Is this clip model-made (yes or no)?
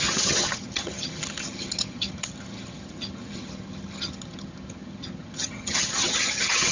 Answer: yes